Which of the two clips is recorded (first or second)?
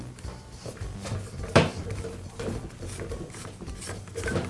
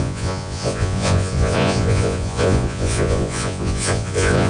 first